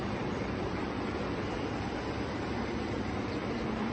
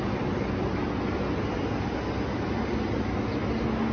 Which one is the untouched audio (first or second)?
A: second